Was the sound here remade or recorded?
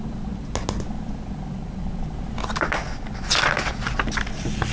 recorded